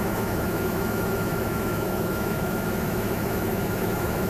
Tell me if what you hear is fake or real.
fake